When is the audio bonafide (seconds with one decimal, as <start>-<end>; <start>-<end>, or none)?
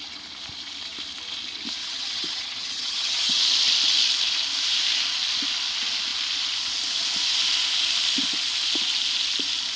0.0-1.8; 3.4-9.8